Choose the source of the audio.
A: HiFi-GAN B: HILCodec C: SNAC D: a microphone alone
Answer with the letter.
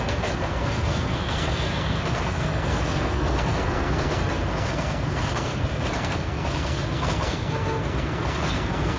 C